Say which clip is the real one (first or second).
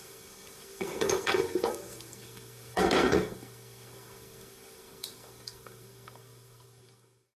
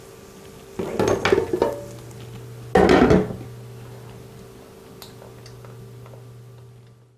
second